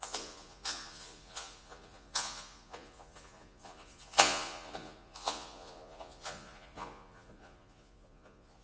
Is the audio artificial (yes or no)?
yes